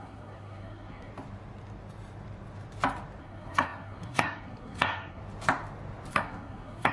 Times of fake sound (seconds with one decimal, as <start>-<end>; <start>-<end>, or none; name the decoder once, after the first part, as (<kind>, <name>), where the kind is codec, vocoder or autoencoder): 0.0-1.1 (codec, SNAC); 3.2-5.2; 6.1-6.9